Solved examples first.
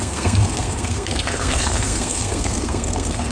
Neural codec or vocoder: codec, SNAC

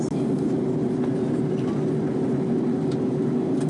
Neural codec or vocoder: none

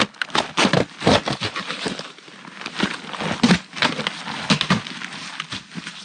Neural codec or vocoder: none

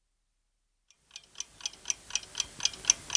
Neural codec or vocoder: none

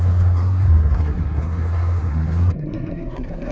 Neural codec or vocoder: codec, SNAC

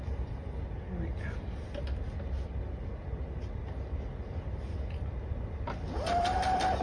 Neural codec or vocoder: none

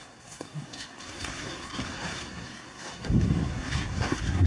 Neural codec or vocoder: codec, SNAC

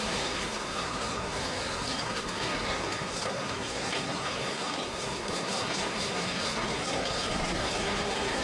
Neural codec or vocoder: codec, SNAC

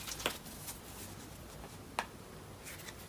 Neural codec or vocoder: none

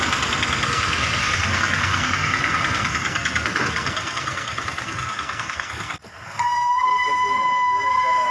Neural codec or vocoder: codec, SNAC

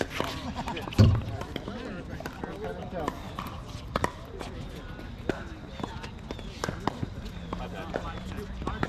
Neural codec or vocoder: none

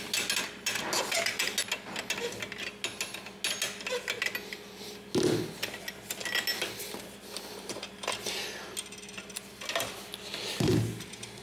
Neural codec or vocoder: none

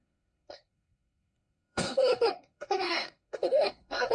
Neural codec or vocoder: codec, SNAC